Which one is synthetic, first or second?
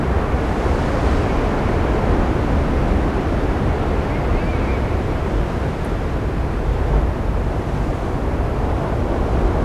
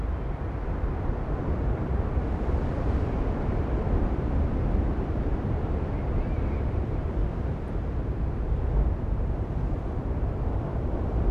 second